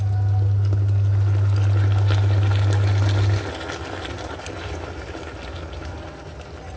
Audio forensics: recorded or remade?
recorded